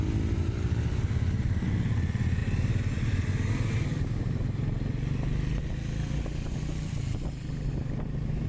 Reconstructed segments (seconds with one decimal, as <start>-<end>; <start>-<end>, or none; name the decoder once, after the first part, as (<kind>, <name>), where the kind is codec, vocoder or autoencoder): 2.4-4.8 (vocoder, BigVGAN v2)